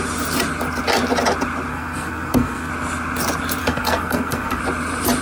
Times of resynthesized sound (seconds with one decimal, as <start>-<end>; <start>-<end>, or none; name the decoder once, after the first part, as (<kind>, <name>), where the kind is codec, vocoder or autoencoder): 1.7-2.7 (codec, SNAC); 3.6-4.6